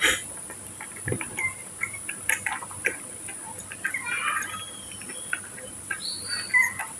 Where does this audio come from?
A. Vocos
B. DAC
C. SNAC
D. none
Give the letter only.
D